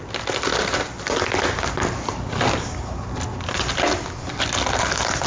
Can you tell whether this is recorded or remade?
recorded